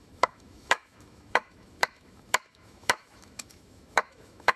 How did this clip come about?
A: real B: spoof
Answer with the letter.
B